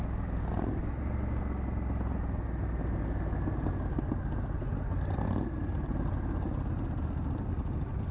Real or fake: real